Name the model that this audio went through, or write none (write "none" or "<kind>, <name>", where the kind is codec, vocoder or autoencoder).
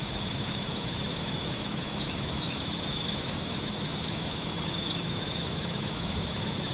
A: autoencoder, DAC-VAE